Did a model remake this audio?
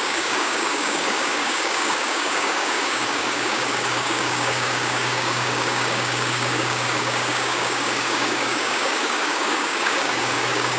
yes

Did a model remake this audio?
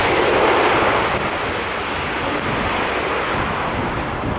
no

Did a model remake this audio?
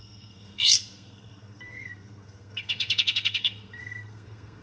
yes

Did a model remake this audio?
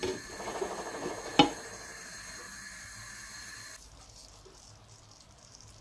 no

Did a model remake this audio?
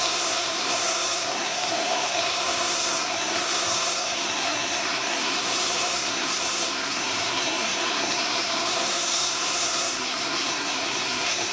yes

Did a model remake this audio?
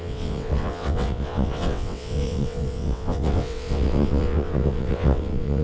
yes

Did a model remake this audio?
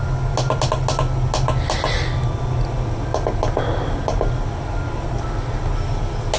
no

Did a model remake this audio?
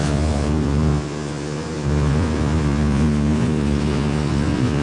yes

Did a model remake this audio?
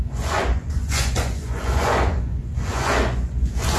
yes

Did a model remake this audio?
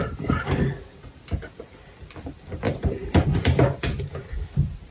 yes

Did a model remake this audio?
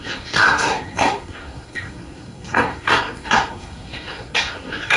yes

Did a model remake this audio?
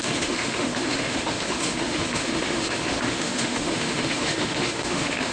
yes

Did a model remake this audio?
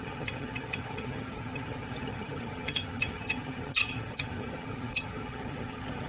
yes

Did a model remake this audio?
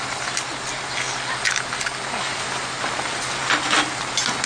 no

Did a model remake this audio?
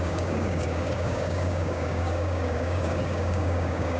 yes